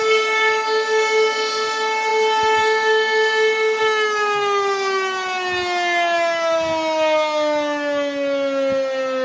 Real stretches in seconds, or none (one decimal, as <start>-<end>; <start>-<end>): 0.0-9.2